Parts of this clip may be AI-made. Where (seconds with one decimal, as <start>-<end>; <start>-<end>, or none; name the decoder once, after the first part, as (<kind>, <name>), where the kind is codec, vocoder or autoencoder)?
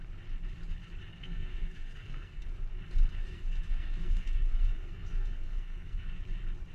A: 1.1-2.4 (codec, SNAC); 3.1-6.2